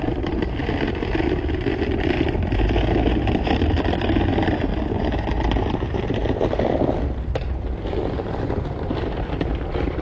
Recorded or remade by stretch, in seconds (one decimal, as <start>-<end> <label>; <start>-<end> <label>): 0.0-0.6 remade; 0.6-3.1 recorded; 3.1-4.7 remade; 4.7-5.7 recorded; 5.7-6.2 remade; 6.2-7.4 recorded; 7.4-10.0 remade